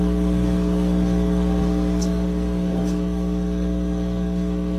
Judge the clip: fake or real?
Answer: fake